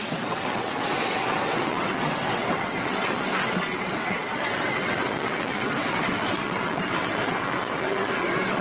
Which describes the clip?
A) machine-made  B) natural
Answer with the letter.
A